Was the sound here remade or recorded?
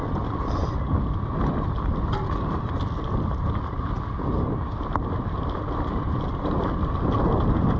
recorded